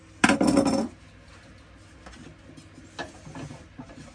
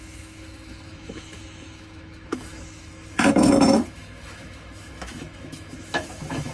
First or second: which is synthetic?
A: second